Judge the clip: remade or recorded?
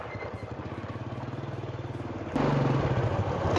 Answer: recorded